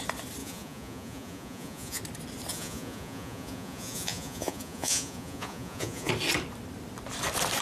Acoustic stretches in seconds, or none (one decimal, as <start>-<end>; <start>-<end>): 0.0-0.4; 2.0-2.5; 6.1-7.6

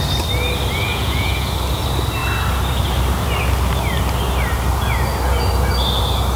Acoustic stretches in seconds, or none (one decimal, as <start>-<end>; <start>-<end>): 0.0-0.9; 1.5-6.4

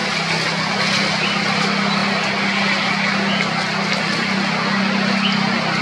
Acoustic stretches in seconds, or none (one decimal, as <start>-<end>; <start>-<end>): 0.0-5.8

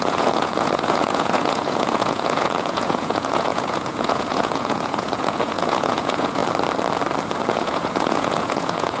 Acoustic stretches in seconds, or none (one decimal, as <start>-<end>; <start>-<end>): 6.4-7.5

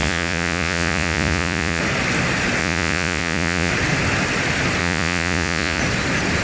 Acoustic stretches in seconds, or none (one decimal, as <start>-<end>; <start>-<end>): 1.8-2.6; 3.7-4.8; 5.8-6.4

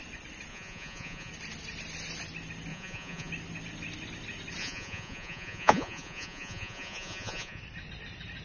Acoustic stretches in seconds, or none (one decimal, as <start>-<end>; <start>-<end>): 0.0-0.5; 1.3-2.7; 3.3-4.6; 7.6-8.4